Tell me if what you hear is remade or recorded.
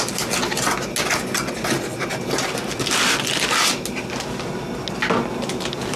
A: recorded